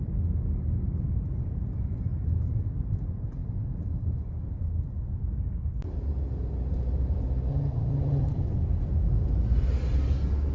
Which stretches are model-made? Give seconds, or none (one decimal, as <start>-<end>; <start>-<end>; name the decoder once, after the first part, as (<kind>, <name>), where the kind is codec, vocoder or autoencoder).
7.5-8.5 (vocoder, HiFi-GAN)